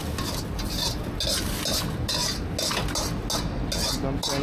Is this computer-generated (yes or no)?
no